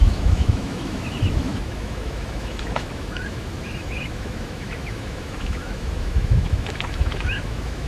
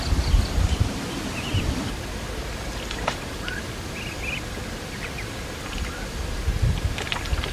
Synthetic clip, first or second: first